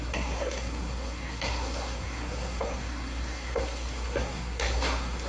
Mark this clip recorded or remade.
remade